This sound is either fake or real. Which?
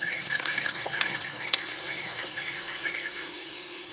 fake